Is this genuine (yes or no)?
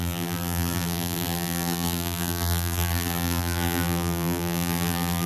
no